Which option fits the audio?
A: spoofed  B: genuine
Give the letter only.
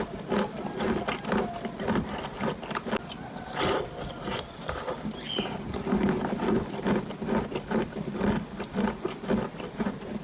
B